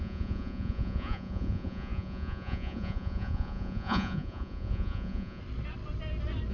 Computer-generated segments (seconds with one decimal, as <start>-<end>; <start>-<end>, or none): 0.0-5.4